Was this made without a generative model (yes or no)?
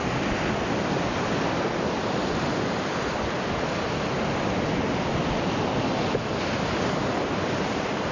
yes